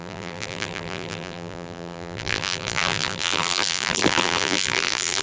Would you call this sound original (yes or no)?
no